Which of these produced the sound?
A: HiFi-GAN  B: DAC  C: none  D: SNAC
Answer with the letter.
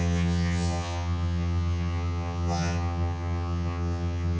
A